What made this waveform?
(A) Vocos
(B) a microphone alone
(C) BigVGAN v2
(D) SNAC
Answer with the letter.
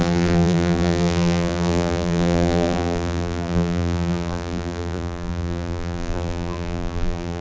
C